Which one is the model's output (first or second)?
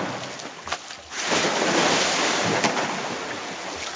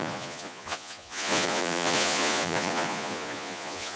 second